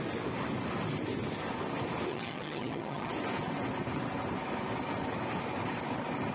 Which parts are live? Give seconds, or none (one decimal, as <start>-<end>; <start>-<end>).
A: 0.0-2.1; 3.1-6.3